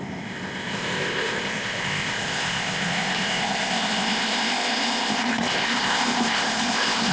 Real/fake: fake